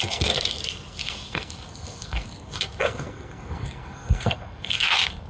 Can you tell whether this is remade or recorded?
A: remade